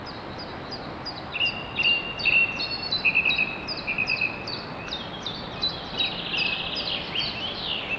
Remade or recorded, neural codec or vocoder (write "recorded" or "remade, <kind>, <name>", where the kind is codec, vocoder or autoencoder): recorded